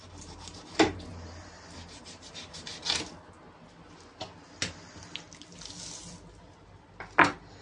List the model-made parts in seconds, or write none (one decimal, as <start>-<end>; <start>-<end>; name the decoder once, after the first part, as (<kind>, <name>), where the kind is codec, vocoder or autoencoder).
0.0-2.7 (vocoder, BigVGAN v2)